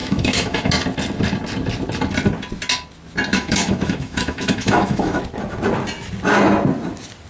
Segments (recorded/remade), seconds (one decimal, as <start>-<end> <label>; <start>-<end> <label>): 0.0-0.7 remade; 0.7-3.3 recorded; 3.3-5.2 remade; 5.2-7.3 recorded